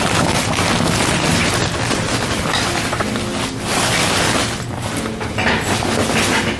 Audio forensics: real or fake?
real